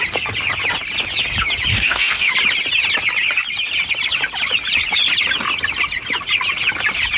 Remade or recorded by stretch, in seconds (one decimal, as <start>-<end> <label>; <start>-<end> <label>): 0.0-1.7 recorded; 1.7-2.3 remade; 2.3-7.2 recorded